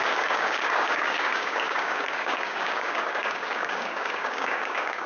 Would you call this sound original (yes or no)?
no